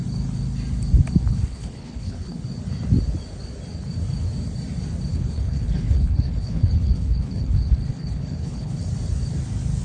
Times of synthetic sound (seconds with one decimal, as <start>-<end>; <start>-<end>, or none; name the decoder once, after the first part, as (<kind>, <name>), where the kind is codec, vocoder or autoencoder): 1.3-2.4 (codec, HILCodec); 5.1-8.8